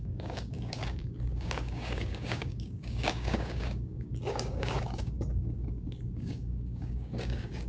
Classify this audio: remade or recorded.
remade